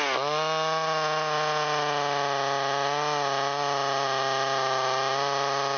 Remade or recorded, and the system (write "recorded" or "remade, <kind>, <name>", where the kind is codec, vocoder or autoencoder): recorded